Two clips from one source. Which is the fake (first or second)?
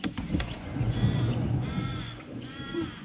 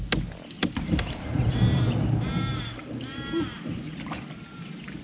first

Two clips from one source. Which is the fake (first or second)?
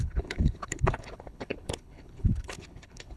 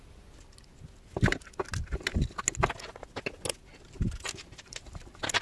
first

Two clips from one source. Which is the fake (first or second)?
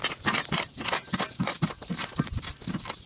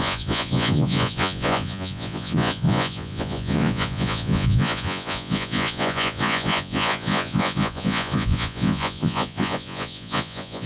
second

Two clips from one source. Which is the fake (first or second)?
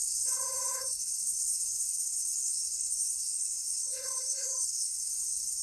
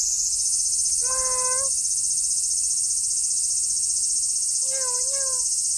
first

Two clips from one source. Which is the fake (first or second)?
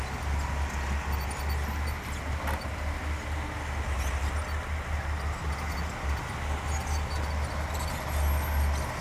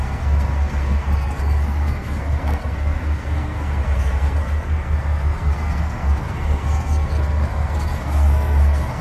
second